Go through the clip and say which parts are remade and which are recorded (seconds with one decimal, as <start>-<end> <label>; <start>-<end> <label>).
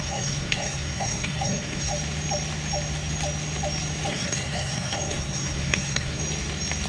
0.0-1.9 remade; 1.9-4.1 recorded; 4.1-6.2 remade; 6.2-6.9 recorded